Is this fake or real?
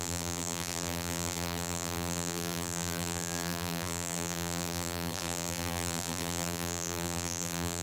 fake